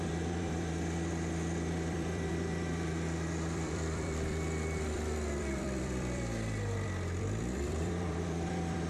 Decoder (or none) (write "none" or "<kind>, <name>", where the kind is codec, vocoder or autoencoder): vocoder, BigVGAN v2